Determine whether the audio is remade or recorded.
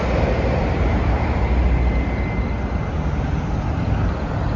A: recorded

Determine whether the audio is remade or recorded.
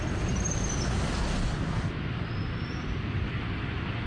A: recorded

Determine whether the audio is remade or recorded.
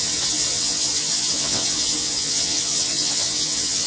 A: remade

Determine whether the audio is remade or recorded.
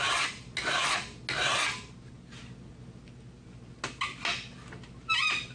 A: recorded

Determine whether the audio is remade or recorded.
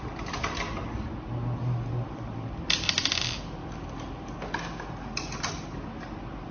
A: recorded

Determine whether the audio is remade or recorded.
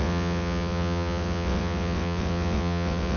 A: remade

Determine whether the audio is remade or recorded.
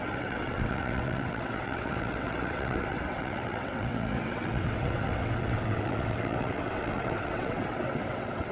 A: remade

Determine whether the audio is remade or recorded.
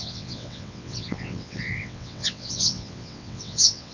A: remade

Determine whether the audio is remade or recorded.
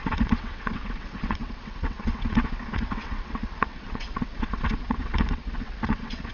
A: remade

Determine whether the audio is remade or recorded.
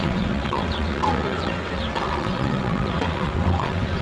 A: remade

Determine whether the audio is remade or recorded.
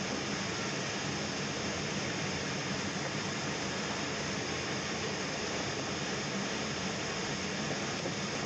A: recorded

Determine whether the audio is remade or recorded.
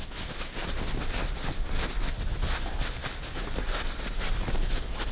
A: recorded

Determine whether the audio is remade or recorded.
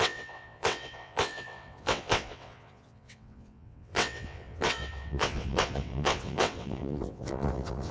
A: remade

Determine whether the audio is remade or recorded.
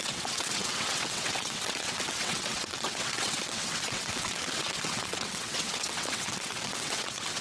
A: remade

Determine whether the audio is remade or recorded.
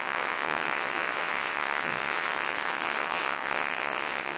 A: remade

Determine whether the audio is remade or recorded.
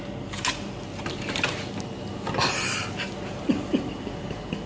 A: recorded